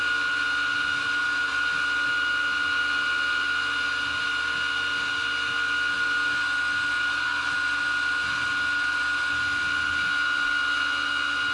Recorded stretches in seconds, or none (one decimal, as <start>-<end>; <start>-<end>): 0.0-11.5